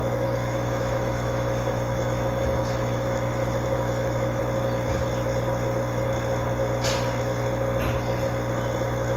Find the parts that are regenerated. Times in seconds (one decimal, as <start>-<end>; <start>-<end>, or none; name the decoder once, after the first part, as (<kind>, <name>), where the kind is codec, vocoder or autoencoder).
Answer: 0.0-4.4 (autoencoder, DAC-VAE)